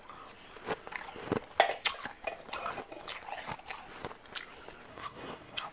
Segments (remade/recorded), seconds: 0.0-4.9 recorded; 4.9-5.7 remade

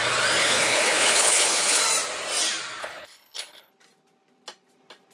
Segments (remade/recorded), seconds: 0.0-0.4 recorded; 0.4-1.8 remade; 1.8-2.8 recorded; 2.8-3.7 remade; 3.7-5.1 recorded

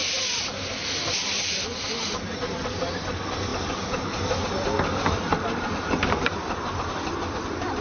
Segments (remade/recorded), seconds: 0.0-0.8 remade; 0.8-1.4 recorded; 1.4-7.8 remade

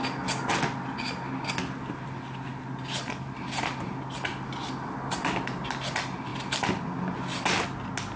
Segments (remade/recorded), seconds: 0.0-8.2 recorded

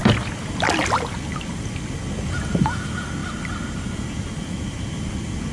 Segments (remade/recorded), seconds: 0.0-5.5 recorded